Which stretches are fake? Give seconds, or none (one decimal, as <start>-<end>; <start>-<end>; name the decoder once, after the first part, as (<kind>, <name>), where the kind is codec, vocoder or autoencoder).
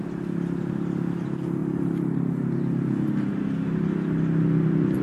1.6-3.4 (vocoder, BigVGAN v2)